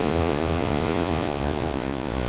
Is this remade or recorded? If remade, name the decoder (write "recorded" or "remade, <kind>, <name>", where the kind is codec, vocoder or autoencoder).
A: remade, vocoder, Vocos